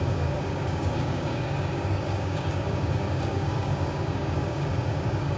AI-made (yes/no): yes